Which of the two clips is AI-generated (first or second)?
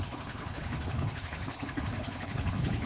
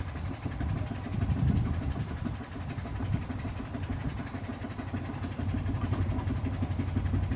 first